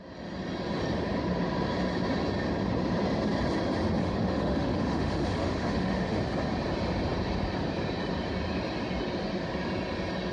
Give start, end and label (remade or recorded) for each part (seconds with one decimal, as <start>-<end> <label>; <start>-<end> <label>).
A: 0.0-4.0 recorded; 4.0-6.2 remade; 6.2-10.3 recorded